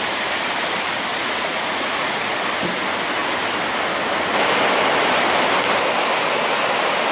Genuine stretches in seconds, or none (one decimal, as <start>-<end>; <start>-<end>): 0.0-1.1; 2.4-7.1